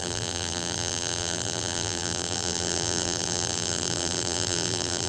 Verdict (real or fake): fake